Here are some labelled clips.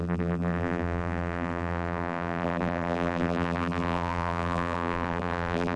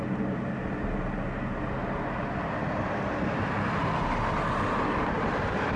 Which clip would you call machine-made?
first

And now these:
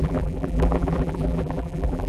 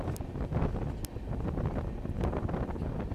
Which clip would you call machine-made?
first